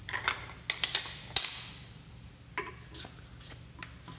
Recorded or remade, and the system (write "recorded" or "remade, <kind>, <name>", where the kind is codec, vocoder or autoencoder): recorded